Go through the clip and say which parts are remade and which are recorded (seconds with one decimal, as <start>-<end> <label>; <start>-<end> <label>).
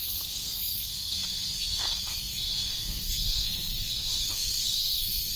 0.0-5.4 remade